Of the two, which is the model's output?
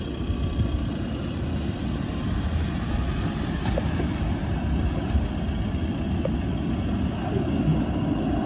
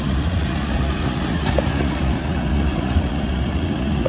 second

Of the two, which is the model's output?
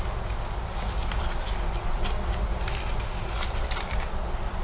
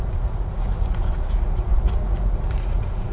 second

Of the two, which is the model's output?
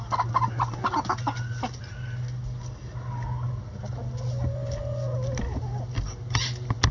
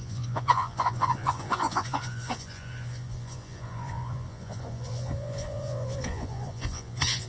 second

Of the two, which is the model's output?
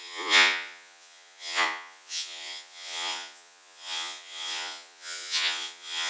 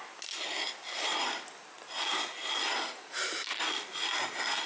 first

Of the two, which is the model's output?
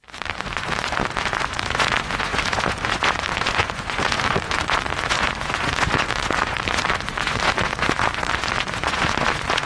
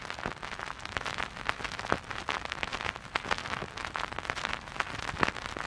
first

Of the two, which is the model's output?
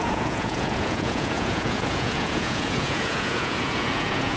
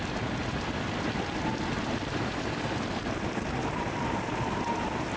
first